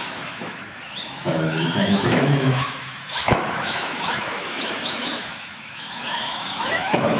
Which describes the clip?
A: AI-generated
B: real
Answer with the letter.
A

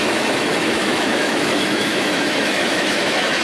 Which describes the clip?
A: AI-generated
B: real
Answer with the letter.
A